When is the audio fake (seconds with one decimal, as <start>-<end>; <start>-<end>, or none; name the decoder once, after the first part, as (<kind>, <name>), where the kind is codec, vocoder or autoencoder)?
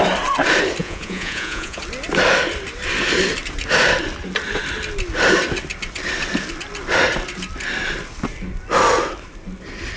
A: 0.8-1.8 (vocoder, Vocos)